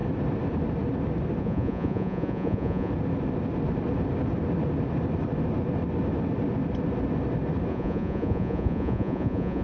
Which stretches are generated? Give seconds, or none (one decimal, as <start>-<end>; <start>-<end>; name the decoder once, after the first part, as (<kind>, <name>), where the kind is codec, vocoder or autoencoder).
1.4-2.9 (vocoder, Vocos); 7.7-9.6